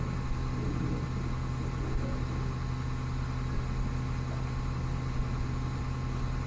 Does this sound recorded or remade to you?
recorded